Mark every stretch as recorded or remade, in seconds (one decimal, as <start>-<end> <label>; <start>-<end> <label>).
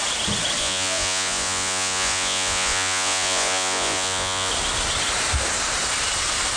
0.0-0.6 recorded; 0.6-4.5 remade; 4.5-6.6 recorded